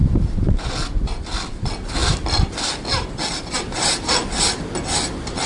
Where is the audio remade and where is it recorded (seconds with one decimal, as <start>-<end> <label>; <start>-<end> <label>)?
0.0-0.7 remade; 0.7-3.3 recorded; 3.3-4.4 remade; 4.4-5.5 recorded